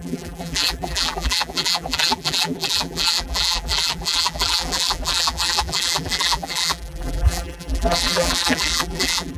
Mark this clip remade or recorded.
remade